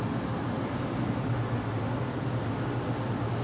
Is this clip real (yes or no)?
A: yes